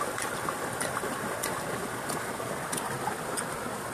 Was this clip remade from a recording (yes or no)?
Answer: no